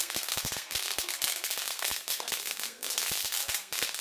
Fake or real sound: fake